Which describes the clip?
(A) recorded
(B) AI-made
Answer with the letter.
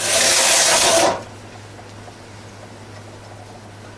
A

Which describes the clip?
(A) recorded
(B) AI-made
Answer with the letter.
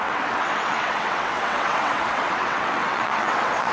B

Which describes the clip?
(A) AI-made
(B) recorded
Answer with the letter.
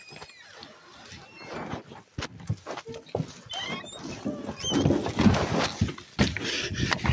B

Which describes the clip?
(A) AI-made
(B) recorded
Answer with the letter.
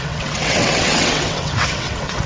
A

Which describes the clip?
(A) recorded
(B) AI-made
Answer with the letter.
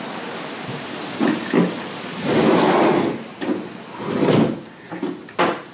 A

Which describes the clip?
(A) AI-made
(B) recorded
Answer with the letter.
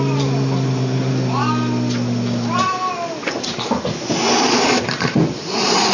B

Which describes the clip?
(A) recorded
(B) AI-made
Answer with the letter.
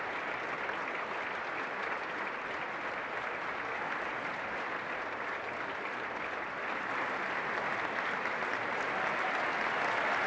A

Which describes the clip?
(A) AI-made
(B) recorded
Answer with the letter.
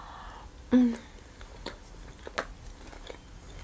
B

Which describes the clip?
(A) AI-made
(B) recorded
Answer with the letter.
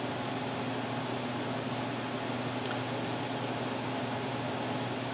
B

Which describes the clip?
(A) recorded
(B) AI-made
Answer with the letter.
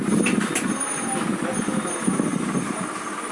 A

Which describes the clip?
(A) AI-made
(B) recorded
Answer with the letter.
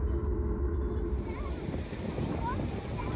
B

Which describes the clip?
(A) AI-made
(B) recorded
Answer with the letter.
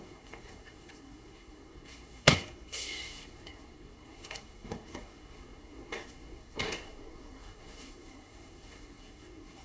A